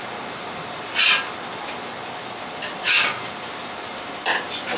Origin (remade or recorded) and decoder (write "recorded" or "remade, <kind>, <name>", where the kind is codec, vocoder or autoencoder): recorded